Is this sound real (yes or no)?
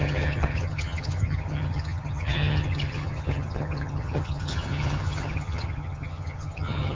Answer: no